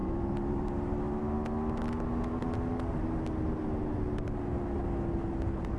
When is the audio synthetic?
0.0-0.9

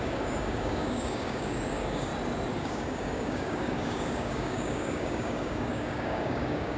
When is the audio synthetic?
0.0-2.1; 2.6-6.8

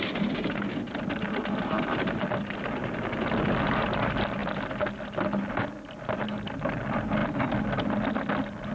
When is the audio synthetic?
none

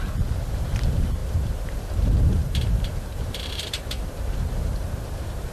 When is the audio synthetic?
0.0-5.5

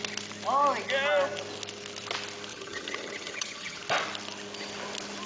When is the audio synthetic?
2.5-3.8